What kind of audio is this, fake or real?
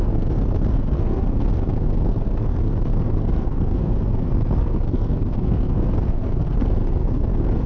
fake